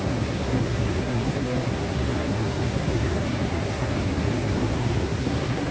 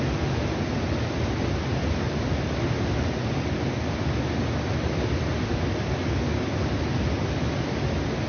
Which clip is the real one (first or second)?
second